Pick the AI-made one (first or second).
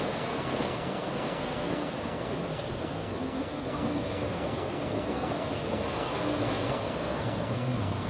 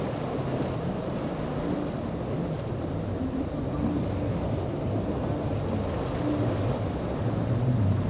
first